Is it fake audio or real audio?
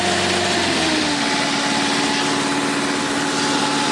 real